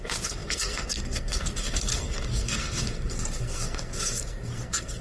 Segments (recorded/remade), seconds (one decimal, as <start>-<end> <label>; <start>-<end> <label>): 0.0-5.0 remade